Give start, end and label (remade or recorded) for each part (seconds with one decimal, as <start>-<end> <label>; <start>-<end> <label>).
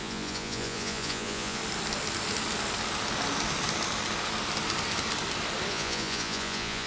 0.0-1.6 remade; 1.6-5.7 recorded; 5.7-6.9 remade